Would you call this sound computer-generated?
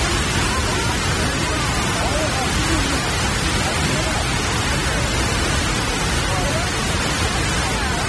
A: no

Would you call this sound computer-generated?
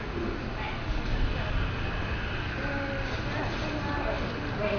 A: no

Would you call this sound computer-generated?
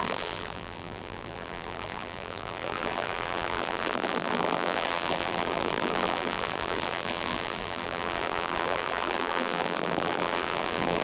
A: yes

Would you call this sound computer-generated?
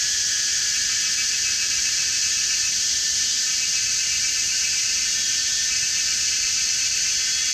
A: no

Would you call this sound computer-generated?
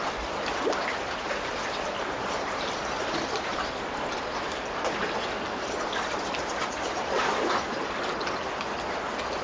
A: no